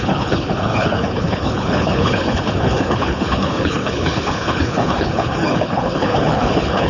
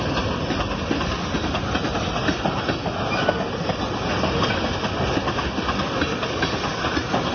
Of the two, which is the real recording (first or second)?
second